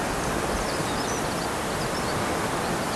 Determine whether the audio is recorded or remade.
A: recorded